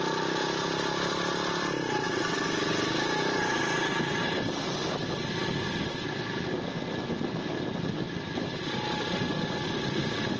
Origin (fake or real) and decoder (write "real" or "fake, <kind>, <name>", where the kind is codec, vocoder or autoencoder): real